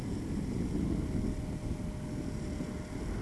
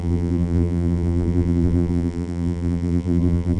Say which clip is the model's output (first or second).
second